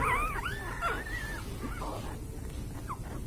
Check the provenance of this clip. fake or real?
real